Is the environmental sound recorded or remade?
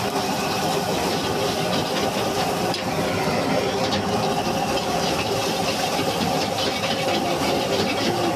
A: recorded